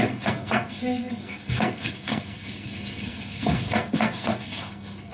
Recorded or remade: remade